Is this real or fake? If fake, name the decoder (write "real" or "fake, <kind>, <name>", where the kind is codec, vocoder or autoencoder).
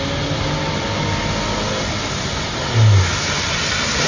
real